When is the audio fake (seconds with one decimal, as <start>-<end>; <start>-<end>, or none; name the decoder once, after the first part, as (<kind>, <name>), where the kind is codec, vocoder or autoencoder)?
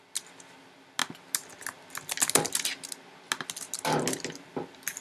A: none